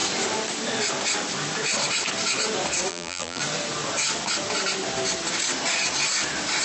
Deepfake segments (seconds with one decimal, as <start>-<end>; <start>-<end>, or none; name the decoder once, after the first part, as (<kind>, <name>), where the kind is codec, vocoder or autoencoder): 2.9-3.4 (vocoder, BigVGAN v2)